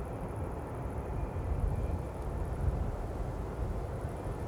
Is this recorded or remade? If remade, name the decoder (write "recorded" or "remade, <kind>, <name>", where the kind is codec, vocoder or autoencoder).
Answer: remade, vocoder, BigVGAN v2